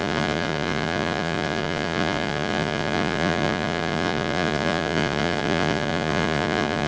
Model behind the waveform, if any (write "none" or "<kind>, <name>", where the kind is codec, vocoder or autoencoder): vocoder, Vocos